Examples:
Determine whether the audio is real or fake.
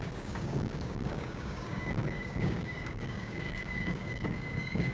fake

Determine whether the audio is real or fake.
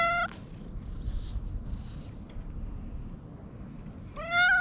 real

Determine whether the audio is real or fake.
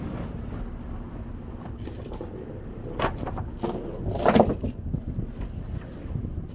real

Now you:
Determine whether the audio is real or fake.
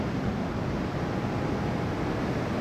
real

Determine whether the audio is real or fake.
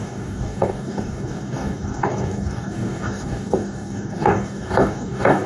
fake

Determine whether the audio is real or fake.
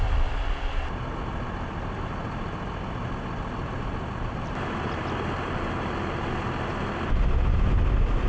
real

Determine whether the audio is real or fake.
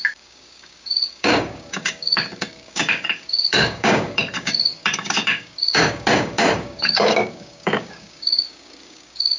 fake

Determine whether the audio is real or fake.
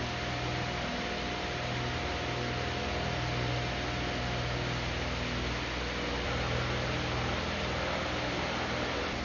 real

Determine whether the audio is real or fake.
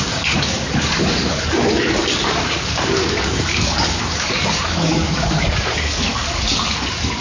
fake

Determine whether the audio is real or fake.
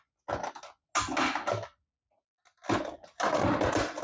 real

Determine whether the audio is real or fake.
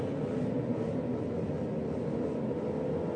real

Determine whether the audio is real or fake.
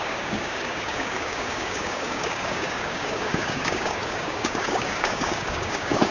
fake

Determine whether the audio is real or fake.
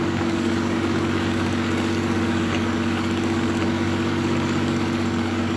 fake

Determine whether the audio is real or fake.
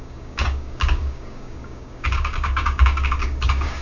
fake